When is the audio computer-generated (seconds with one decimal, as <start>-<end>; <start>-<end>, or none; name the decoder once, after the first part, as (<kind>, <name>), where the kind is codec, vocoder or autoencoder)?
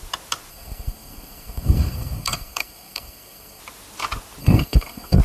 0.5-3.6 (codec, SNAC); 4.4-5.2